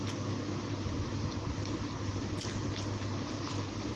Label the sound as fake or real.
real